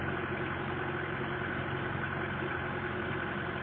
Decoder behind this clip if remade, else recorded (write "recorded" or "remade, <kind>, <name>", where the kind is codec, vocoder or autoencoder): recorded